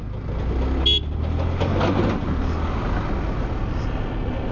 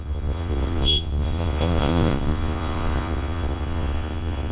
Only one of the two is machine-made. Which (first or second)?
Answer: second